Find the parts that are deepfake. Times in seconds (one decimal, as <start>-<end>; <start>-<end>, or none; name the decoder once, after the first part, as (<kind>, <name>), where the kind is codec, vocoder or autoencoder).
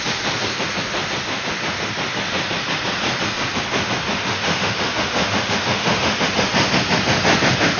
4.2-6.3 (autoencoder, DAC-VAE)